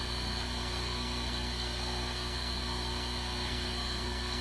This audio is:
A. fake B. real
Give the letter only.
A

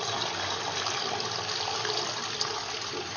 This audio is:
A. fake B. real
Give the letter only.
B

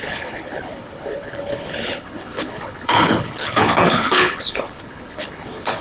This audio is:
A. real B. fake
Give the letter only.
B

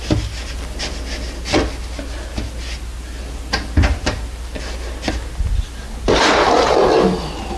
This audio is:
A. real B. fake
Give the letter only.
A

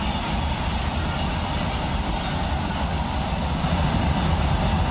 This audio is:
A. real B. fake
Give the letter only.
A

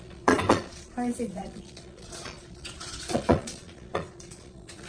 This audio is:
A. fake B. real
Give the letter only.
A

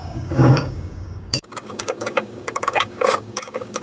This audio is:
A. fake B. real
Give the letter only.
A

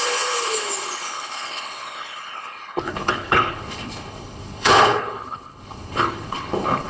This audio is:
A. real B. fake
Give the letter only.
B